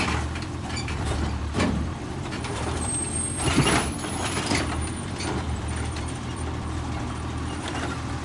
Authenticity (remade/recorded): remade